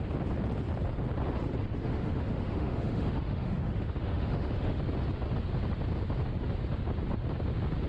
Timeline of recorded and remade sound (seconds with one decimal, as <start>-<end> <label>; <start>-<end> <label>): 0.0-1.8 recorded; 1.8-4.8 remade; 4.8-7.9 recorded